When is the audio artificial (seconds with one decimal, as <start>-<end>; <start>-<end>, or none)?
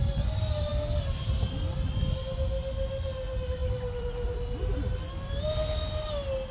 3.6-4.4